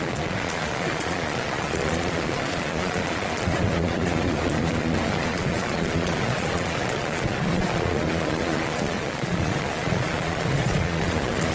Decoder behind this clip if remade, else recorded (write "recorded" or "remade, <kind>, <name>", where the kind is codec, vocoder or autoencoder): remade, vocoder, Vocos